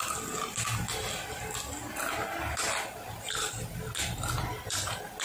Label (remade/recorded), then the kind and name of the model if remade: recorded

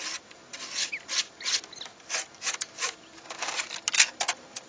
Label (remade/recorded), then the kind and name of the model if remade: recorded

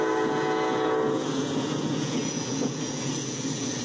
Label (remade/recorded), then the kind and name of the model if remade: remade, vocoder, Vocos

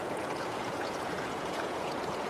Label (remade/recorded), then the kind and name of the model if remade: remade, vocoder, Vocos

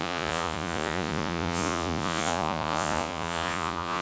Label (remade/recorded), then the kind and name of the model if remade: remade, vocoder, Vocos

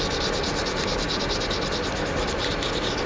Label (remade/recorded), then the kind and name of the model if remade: recorded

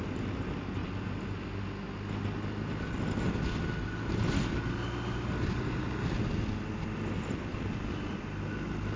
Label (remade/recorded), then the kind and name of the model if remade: recorded